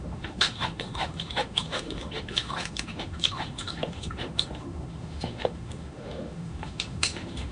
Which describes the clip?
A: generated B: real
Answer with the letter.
A